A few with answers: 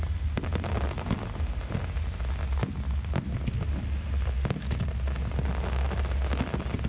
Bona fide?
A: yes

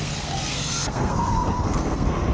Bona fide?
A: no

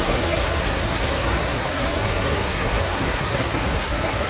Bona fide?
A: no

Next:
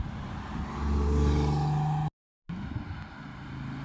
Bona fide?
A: yes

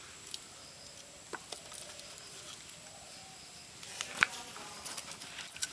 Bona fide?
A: yes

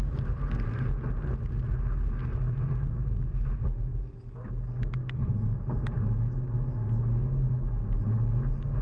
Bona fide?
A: yes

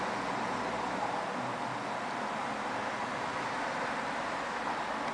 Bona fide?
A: yes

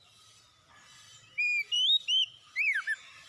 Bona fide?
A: yes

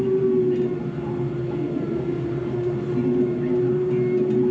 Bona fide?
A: yes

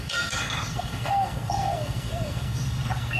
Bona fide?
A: no